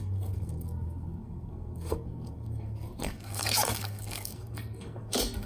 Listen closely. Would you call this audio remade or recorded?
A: remade